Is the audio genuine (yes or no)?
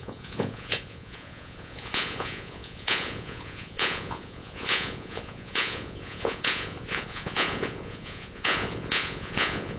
no